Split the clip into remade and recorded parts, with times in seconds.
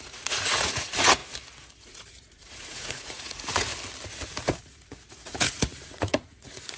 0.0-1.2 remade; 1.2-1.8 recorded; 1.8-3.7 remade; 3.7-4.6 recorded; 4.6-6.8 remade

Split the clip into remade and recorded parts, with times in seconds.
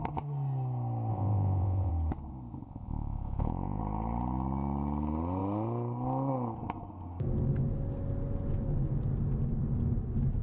0.0-1.1 recorded; 1.1-1.9 remade; 1.9-2.6 recorded; 2.6-3.8 remade; 3.8-10.4 recorded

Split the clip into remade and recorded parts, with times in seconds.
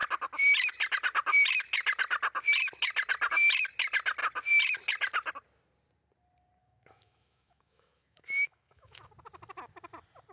0.0-6.6 recorded; 6.6-9.1 remade; 9.1-10.3 recorded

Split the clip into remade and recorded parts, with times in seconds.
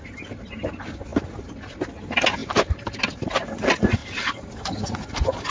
0.0-5.5 recorded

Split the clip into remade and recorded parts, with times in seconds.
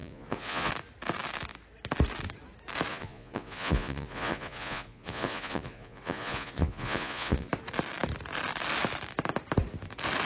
0.0-0.7 remade; 0.7-2.9 recorded; 2.9-7.5 remade; 7.5-10.3 recorded